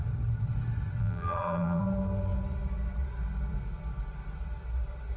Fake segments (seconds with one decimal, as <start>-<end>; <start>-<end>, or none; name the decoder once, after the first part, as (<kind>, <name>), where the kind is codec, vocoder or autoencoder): 1.0-1.8 (vocoder, BigVGAN v2)